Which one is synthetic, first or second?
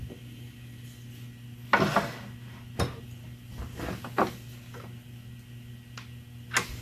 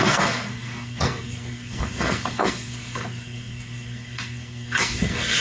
second